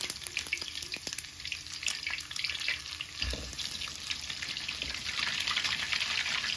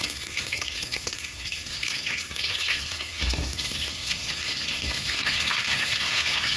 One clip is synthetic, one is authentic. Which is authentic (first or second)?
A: first